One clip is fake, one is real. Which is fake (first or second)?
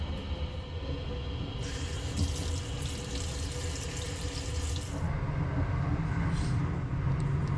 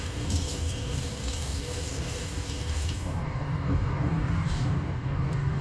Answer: second